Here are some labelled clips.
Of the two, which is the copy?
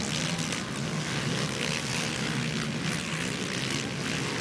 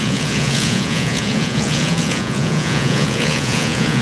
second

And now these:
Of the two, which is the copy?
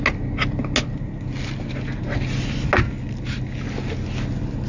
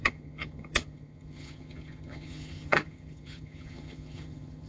second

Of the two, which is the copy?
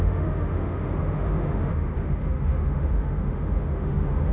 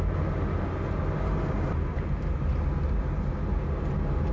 first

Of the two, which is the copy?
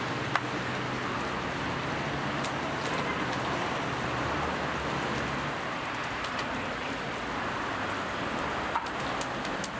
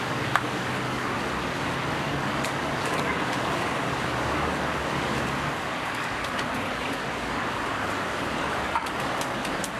second